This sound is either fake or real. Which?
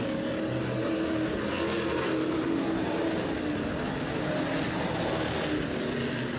real